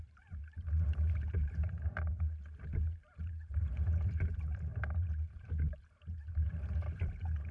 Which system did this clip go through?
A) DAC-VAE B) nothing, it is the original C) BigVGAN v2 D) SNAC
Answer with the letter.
C